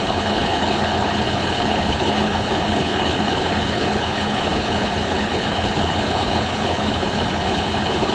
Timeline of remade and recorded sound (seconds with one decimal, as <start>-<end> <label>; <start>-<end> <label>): 0.0-8.1 remade